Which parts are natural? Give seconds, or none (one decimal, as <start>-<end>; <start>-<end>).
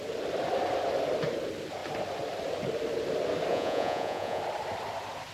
0.0-3.5; 4.4-5.3